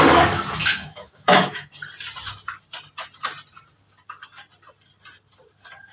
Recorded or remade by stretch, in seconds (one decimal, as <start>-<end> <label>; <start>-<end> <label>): 0.0-0.6 recorded; 0.6-1.7 remade; 1.7-5.9 recorded

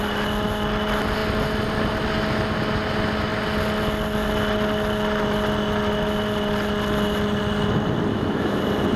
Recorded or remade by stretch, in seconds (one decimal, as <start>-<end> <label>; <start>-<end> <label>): 0.0-8.1 recorded; 8.1-8.6 remade; 8.6-9.0 recorded

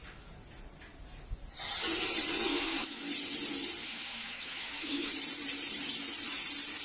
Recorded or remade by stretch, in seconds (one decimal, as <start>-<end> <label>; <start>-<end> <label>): 0.0-2.5 recorded; 2.5-3.1 remade; 3.1-3.8 recorded; 3.8-5.1 remade; 5.1-6.8 recorded

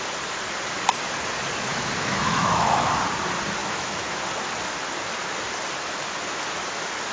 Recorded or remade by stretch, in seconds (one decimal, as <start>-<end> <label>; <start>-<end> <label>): 0.0-1.7 recorded; 1.7-2.9 remade; 2.9-3.6 recorded; 3.6-4.2 remade; 4.2-7.1 recorded

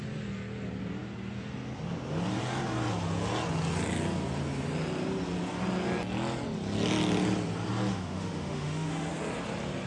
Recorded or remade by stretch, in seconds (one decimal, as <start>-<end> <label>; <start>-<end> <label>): 0.0-7.9 recorded; 7.9-9.1 remade; 9.1-9.9 recorded

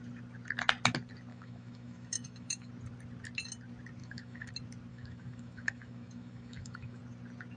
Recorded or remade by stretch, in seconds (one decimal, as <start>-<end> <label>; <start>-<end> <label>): 0.0-1.3 recorded; 1.3-2.7 remade; 2.7-4.0 recorded; 4.0-4.5 remade; 4.5-4.9 recorded; 4.9-7.0 remade; 7.0-7.6 recorded

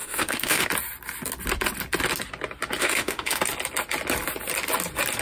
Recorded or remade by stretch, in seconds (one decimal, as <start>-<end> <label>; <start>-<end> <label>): 0.0-0.6 remade; 0.6-2.8 recorded; 2.8-3.4 remade; 3.4-5.2 recorded

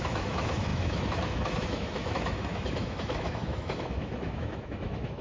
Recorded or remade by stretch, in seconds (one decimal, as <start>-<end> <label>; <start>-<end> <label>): 0.0-5.2 remade